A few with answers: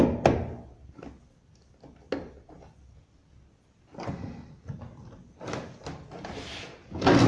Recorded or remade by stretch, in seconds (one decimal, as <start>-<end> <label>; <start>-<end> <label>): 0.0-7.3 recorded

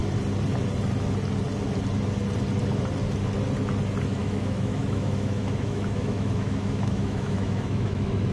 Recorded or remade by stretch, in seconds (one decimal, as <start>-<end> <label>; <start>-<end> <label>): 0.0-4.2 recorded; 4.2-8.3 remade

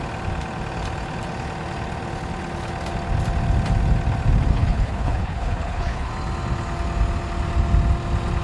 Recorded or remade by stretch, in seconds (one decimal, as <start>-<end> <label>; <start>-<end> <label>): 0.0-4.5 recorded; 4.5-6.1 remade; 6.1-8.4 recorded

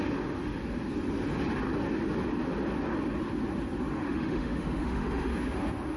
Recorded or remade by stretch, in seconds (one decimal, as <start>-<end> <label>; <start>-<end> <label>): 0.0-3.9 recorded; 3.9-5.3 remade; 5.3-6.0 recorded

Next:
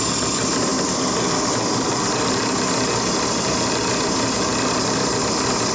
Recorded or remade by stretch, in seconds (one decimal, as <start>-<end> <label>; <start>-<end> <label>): 0.0-5.7 recorded

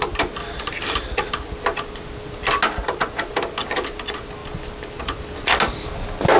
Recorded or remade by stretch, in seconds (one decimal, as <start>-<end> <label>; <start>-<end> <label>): 0.0-6.4 recorded

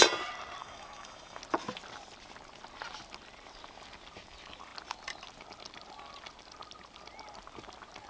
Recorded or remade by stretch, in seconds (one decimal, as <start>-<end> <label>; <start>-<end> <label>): 0.0-0.6 recorded; 0.6-1.4 remade; 1.4-8.1 recorded